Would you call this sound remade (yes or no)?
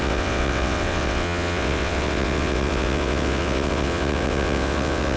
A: yes